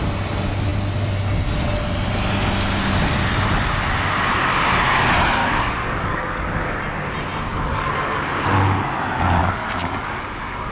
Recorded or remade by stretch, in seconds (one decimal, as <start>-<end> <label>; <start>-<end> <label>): 0.0-5.4 recorded; 5.4-6.8 remade; 6.8-7.5 recorded; 7.5-8.3 remade; 8.3-9.4 recorded; 9.4-10.7 remade